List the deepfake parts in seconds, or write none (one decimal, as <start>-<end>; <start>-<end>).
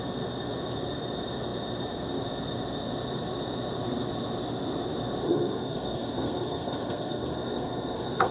5.2-8.3